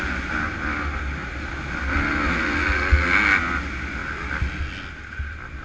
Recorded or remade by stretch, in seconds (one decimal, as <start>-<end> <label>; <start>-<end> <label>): 0.0-5.6 recorded